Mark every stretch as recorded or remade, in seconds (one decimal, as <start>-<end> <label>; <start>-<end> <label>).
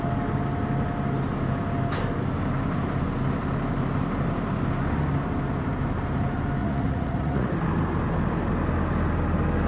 0.0-6.6 recorded; 6.6-7.5 remade; 7.5-9.7 recorded